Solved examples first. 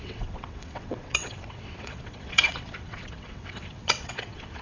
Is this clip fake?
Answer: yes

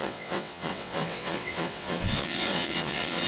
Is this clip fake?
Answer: yes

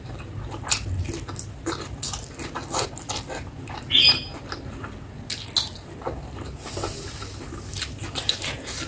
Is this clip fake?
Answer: no